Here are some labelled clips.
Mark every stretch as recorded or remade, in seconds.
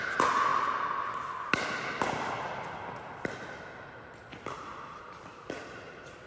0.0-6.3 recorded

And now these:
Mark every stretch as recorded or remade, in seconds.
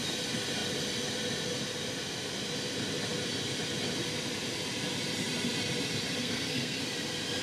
0.0-6.2 recorded; 6.2-6.8 remade; 6.8-7.4 recorded